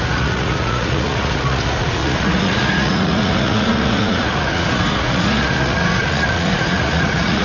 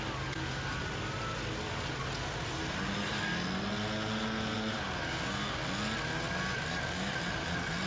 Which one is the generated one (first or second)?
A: first